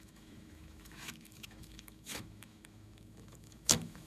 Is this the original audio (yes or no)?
no